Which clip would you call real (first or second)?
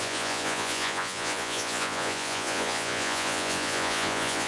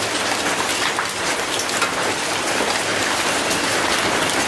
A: second